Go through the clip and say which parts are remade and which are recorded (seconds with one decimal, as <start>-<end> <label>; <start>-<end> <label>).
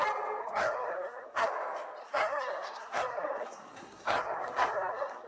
0.0-0.4 recorded; 0.4-1.5 remade; 1.5-2.0 recorded; 2.0-5.3 remade